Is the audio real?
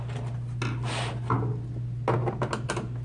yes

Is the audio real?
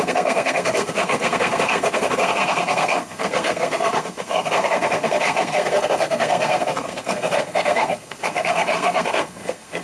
no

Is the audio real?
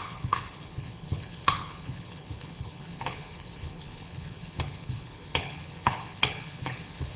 no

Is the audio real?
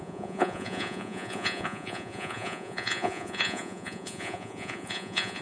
no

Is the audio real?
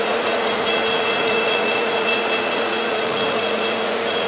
no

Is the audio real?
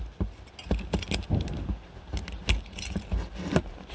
yes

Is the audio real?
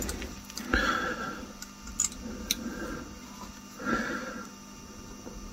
yes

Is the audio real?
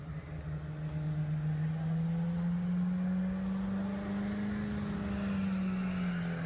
yes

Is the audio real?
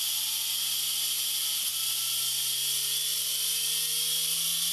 yes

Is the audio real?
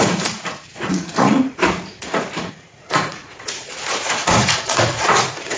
no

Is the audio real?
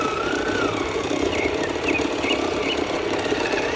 no